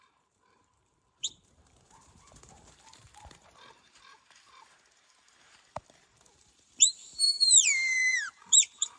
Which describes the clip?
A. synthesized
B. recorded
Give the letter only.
A